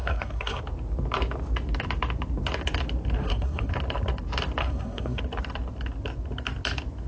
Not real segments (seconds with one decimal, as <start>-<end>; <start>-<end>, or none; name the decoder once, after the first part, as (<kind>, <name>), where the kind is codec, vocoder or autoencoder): 0.0-0.6 (codec, SNAC); 3.2-3.7; 4.6-5.2